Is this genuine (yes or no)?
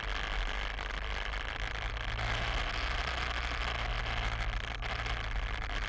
yes